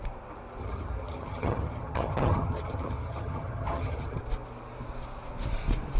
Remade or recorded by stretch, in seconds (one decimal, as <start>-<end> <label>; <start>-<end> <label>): 0.0-0.6 recorded; 0.6-4.2 remade; 4.2-6.0 recorded